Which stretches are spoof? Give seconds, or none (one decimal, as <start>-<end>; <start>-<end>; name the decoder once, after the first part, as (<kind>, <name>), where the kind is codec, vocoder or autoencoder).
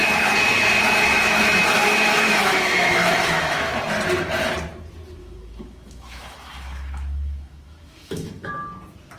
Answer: 0.0-3.7 (autoencoder, DAC-VAE); 5.2-8.5